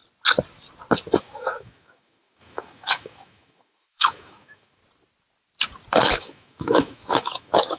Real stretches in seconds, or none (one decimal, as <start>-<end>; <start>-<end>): 0.0-1.2; 4.8-6.1